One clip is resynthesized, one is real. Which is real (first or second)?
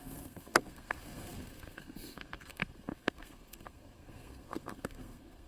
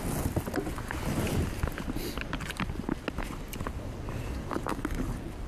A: second